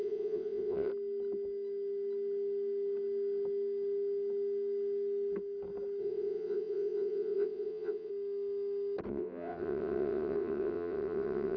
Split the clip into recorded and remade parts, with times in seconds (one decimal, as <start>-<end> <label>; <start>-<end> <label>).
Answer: 0.0-0.9 remade; 0.9-6.0 recorded; 6.0-8.1 remade; 8.1-9.1 recorded; 9.1-11.6 remade